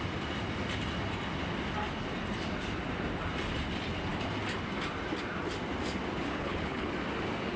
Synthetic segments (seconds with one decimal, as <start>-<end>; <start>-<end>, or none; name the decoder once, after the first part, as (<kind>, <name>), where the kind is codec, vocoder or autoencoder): 6.3-6.9 (codec, HILCodec)